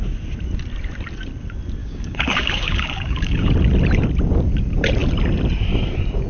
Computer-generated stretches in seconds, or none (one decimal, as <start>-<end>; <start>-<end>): 1.8-3.5